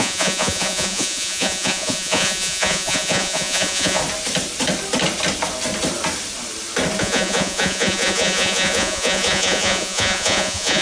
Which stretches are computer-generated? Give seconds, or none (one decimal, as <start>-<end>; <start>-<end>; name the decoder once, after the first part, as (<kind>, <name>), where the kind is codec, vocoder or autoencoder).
0.0-4.0 (vocoder, Vocos); 7.0-10.8